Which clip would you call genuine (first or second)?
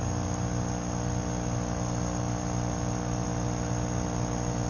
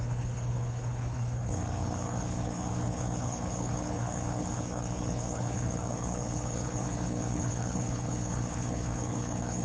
first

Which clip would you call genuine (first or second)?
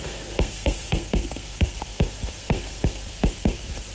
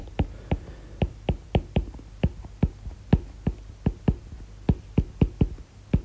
second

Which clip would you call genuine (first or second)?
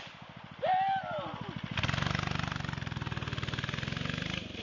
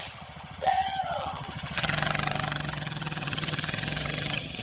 first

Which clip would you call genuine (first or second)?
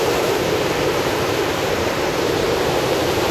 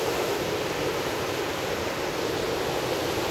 second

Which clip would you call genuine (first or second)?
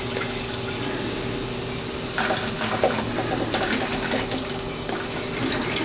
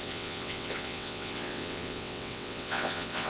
first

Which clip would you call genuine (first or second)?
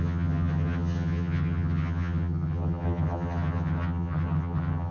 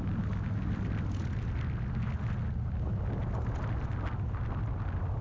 second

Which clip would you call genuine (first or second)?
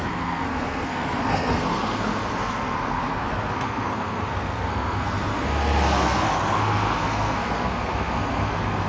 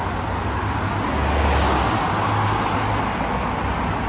second